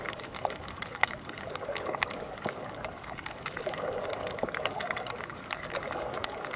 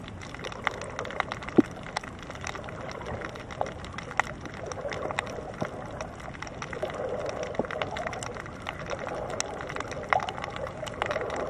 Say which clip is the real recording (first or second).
second